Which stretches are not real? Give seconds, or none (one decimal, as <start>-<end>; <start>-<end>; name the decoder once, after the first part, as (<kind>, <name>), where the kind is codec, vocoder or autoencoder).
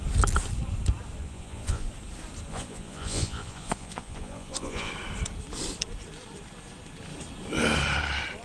1.2-1.9 (vocoder, Vocos); 2.5-4.9